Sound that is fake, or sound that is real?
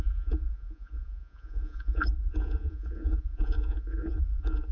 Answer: fake